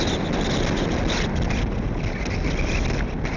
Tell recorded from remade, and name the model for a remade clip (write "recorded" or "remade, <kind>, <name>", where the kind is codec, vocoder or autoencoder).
recorded